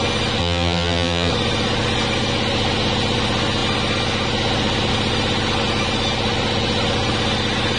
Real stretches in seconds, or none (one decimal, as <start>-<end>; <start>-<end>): 0.0-0.4; 1.3-7.8